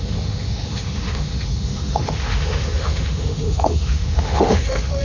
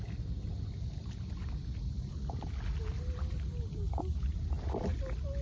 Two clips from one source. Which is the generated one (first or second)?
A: first